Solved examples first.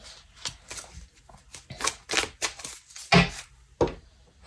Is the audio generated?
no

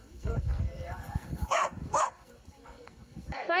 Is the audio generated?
yes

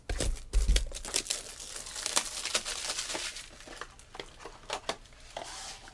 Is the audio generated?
no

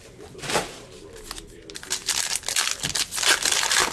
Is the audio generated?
no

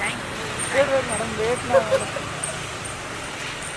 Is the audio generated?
no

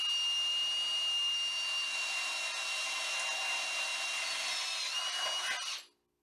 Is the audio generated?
no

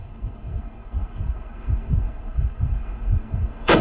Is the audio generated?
yes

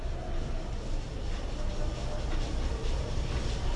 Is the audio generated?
no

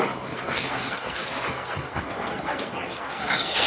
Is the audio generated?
yes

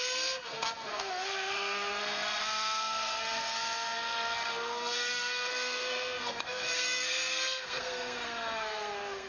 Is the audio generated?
yes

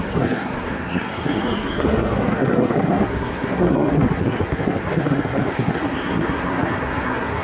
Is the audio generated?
yes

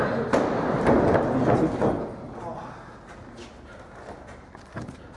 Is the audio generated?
no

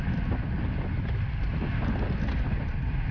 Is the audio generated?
no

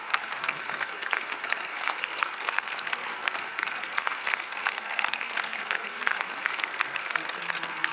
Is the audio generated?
yes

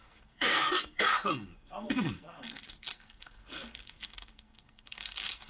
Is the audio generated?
yes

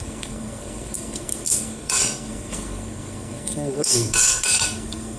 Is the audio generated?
yes